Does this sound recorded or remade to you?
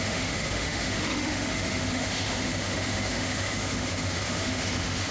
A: remade